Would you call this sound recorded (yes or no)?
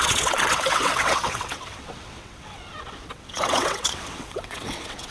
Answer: no